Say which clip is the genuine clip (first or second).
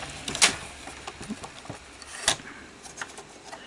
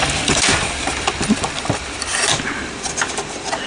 first